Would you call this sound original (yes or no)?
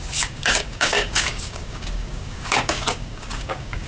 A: no